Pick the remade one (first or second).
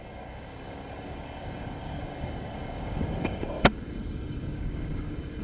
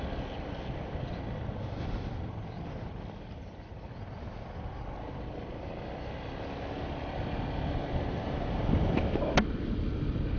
first